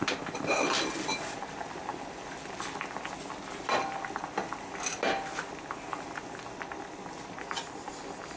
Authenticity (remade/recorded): recorded